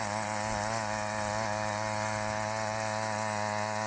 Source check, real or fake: real